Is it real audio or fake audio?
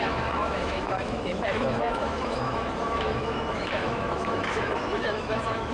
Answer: fake